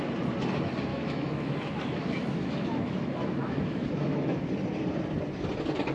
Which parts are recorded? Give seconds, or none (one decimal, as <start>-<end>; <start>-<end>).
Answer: 0.0-0.9; 4.4-5.9